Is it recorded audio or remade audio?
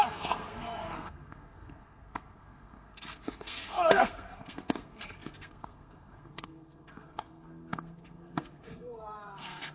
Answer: remade